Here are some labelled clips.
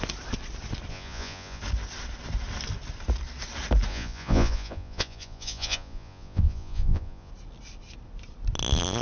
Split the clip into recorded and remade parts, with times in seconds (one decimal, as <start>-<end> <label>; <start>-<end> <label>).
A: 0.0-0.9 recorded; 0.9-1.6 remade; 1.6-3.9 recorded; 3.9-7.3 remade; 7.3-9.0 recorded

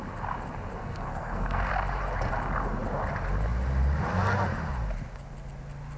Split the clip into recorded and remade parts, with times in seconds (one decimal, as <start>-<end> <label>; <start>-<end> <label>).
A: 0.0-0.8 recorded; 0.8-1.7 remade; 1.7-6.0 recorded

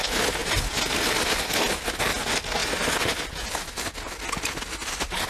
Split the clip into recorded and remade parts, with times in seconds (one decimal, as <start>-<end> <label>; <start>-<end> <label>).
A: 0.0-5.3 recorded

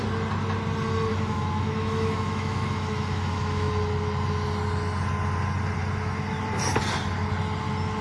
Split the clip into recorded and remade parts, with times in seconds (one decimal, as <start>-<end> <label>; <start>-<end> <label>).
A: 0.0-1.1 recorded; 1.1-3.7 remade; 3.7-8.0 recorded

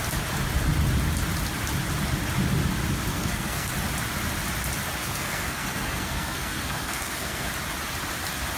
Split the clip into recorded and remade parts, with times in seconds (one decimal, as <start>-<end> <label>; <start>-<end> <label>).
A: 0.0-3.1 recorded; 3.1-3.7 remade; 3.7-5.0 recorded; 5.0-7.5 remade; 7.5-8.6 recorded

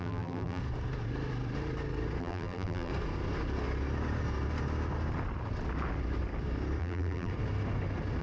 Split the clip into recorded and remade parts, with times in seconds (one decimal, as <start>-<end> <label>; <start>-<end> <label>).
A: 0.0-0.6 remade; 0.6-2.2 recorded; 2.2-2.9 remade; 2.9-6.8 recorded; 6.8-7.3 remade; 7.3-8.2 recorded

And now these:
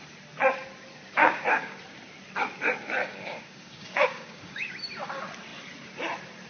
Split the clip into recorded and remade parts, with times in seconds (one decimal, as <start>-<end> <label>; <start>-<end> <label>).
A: 0.0-1.2 recorded; 1.2-1.8 remade; 1.8-3.0 recorded; 3.0-4.7 remade; 4.7-6.5 recorded

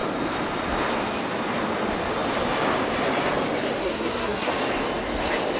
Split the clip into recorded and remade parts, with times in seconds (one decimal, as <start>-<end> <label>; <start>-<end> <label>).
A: 0.0-3.8 recorded; 3.8-4.5 remade; 4.5-5.6 recorded